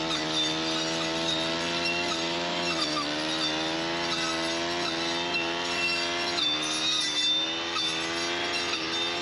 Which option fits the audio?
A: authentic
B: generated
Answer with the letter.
A